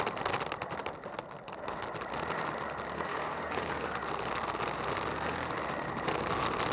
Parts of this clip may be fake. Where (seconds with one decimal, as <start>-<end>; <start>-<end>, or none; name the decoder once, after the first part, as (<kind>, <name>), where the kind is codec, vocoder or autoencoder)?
3.1-3.8 (codec, DAC)